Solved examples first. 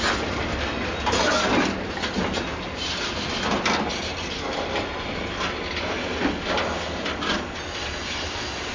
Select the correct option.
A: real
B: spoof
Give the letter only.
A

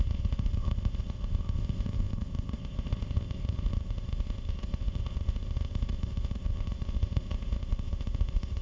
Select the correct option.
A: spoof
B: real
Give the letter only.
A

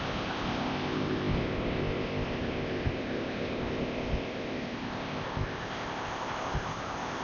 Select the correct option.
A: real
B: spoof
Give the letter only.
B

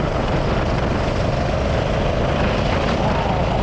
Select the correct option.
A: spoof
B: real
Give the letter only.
B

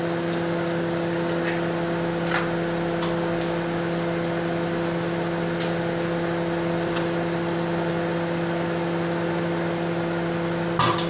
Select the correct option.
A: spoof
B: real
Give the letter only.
B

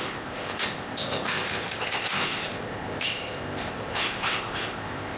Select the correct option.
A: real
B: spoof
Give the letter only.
B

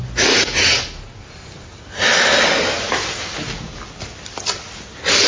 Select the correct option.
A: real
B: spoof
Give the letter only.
A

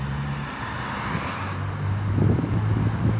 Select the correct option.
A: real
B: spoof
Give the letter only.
A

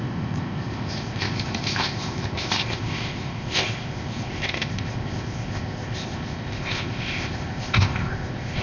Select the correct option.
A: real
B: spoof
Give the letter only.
B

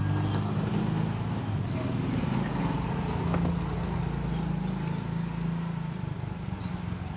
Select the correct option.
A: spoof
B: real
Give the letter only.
B